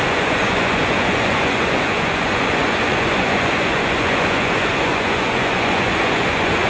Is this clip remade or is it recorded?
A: remade